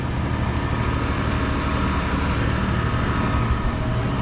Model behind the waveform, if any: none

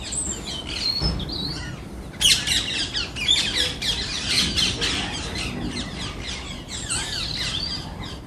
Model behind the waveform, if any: none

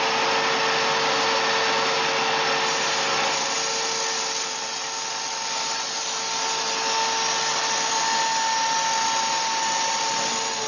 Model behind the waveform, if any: none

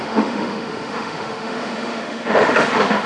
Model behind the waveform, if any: autoencoder, DAC-VAE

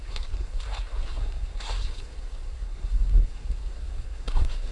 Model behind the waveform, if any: codec, SNAC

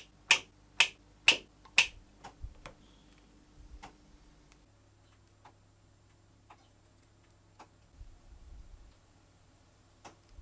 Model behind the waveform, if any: none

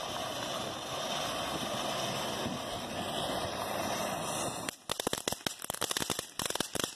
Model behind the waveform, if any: none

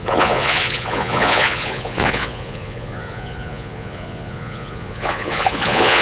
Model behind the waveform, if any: vocoder, Vocos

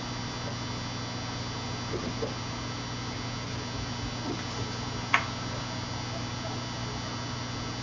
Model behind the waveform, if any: none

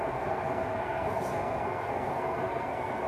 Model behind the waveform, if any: codec, SNAC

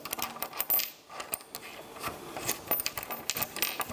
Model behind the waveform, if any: none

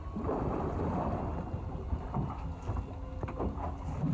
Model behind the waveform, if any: none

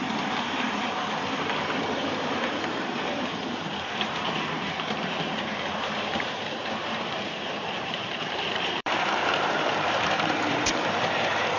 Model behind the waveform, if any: vocoder, BigVGAN v2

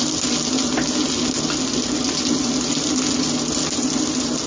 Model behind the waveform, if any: none